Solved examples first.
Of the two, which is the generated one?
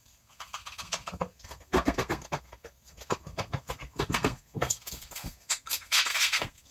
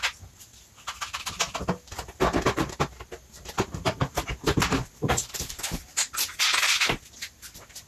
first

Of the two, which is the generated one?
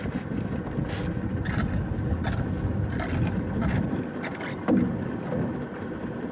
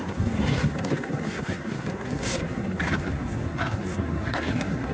second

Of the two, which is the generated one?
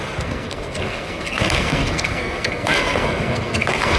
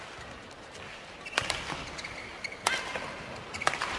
first